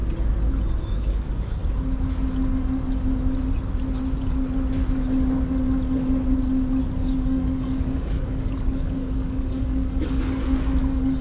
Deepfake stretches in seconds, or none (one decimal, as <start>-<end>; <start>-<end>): 0.8-1.6; 6.8-11.2